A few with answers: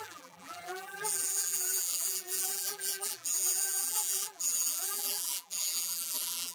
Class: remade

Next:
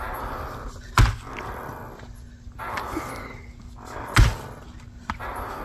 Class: recorded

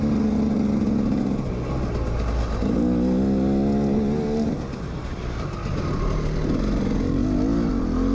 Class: recorded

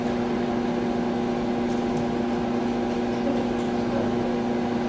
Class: recorded